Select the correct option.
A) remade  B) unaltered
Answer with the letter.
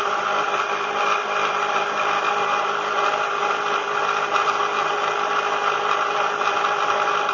B